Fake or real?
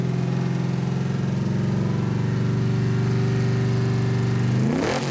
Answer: real